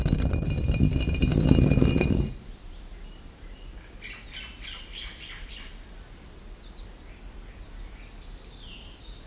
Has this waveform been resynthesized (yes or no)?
no